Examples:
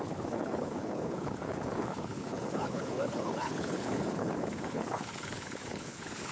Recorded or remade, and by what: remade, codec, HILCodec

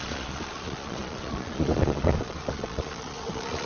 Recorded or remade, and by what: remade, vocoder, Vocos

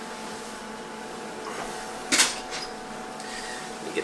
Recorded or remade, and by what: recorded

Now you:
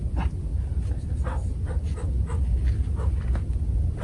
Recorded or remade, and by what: recorded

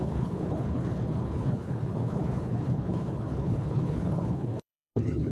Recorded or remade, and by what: remade, codec, HILCodec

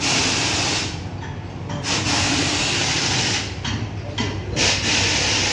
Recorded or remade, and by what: recorded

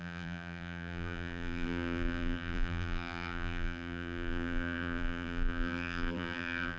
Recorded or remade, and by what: remade, vocoder, BigVGAN v2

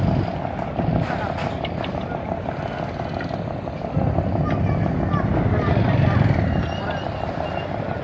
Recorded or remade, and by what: recorded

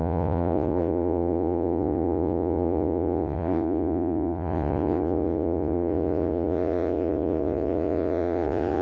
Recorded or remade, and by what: remade, vocoder, Vocos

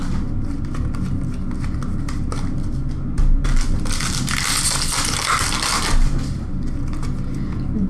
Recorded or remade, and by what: recorded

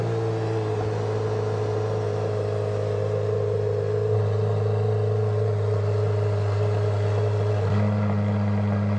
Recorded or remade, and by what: recorded